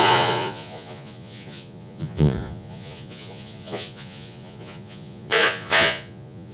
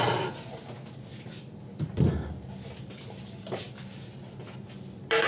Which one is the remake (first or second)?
first